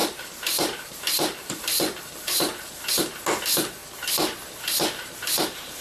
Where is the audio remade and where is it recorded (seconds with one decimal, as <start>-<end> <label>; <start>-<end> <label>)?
0.0-2.9 remade; 2.9-5.8 recorded